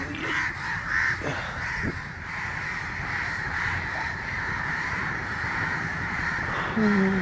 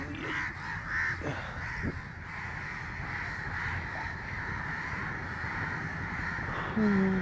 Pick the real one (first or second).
second